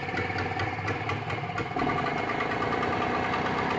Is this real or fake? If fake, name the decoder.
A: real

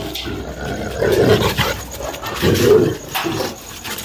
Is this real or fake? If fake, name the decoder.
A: real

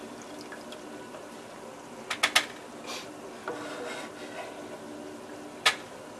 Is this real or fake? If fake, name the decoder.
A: real